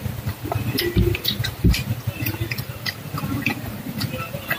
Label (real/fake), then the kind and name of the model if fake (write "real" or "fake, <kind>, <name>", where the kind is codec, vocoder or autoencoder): real